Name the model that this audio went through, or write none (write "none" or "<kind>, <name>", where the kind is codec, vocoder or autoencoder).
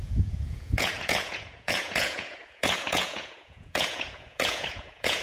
vocoder, Vocos